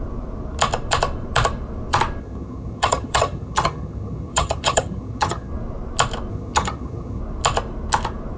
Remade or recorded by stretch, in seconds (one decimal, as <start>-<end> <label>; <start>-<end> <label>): 0.0-2.2 recorded; 2.2-5.5 remade; 5.5-6.3 recorded; 6.3-7.2 remade; 7.2-8.4 recorded